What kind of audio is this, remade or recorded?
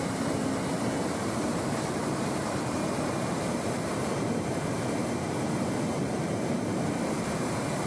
remade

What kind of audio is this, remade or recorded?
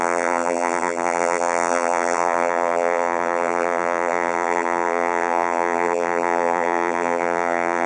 remade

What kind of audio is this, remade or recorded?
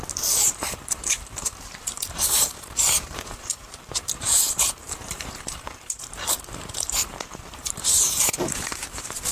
remade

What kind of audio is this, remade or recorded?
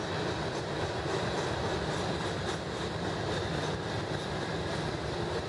recorded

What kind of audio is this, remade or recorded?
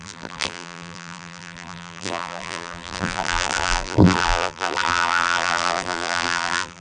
remade